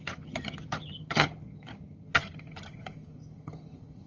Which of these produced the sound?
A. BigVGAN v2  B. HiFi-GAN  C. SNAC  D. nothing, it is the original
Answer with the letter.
B